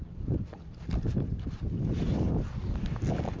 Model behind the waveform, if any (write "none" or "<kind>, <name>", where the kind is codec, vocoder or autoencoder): vocoder, BigVGAN v2